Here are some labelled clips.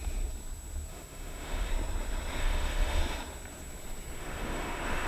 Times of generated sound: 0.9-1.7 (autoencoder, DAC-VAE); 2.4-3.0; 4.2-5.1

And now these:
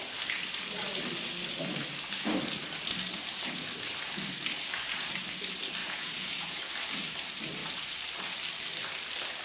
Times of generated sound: 5.8-6.6 (vocoder, Vocos)

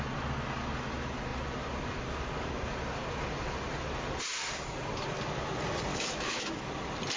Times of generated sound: 5.9-6.6 (autoencoder, DAC-VAE)